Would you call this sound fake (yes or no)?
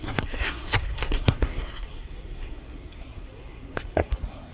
yes